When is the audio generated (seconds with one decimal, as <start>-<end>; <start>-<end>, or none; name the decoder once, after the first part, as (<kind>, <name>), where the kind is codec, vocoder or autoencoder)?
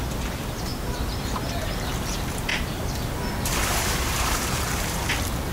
0.7-1.5 (vocoder, BigVGAN v2); 2.5-5.1